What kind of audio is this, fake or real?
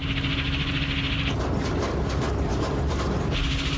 real